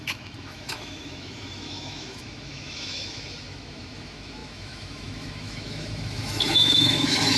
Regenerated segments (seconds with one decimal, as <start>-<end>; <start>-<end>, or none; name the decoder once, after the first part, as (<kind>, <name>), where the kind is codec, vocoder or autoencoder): 0.0-7.4 (autoencoder, DAC-VAE)